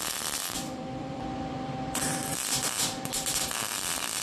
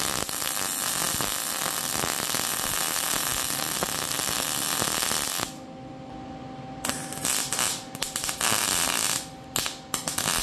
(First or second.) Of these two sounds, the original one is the second